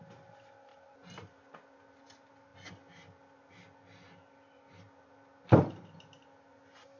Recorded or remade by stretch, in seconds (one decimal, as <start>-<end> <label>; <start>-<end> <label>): 0.0-7.0 recorded